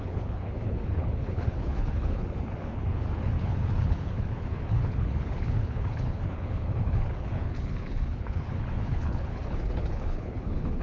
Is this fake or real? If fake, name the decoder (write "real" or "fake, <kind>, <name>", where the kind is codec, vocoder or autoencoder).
fake, codec, HILCodec